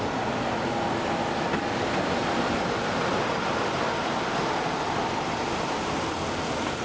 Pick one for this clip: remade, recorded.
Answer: recorded